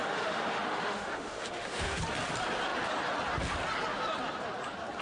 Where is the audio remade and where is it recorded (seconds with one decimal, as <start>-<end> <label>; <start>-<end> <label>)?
0.0-2.0 remade; 2.0-5.0 recorded